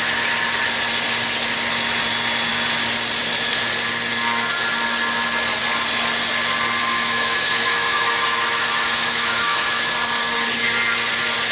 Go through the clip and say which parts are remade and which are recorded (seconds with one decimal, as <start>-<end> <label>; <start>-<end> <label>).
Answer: 0.0-6.8 recorded; 6.8-9.9 remade; 9.9-11.5 recorded